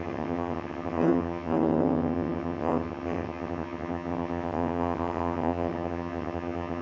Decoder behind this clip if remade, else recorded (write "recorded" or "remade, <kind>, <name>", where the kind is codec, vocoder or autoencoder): remade, vocoder, HiFi-GAN